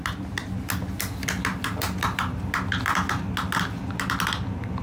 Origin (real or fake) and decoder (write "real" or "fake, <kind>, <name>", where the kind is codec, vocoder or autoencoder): real